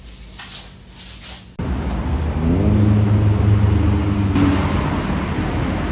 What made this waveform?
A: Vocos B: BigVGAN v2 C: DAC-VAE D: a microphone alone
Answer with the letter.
D